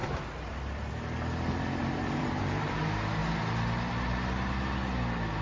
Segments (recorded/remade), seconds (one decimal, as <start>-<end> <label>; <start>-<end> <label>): 0.0-0.9 remade; 0.9-1.8 recorded; 1.8-2.8 remade; 2.8-5.4 recorded